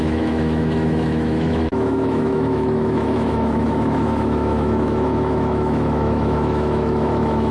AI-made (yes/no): yes